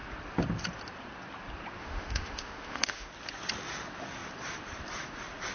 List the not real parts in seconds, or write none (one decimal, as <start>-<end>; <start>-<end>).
1.8-3.1